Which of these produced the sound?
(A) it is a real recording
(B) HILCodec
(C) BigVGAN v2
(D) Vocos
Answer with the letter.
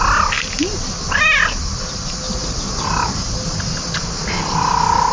A